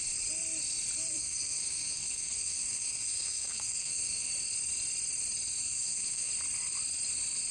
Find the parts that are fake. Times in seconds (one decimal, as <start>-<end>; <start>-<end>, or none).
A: 1.1-4.3; 5.6-6.3